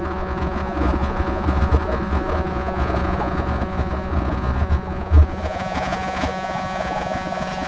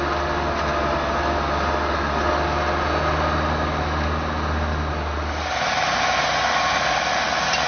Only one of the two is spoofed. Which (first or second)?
first